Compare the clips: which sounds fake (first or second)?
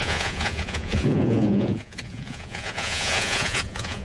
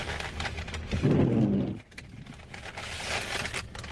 first